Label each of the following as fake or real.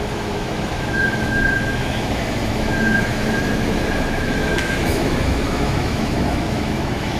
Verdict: fake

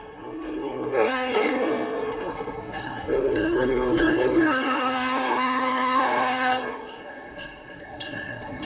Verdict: fake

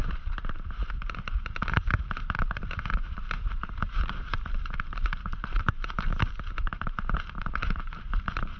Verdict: fake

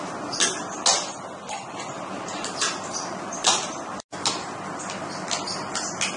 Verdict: real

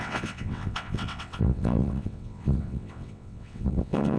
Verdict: fake